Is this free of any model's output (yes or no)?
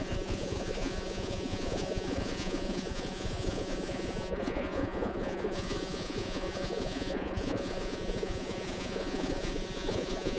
no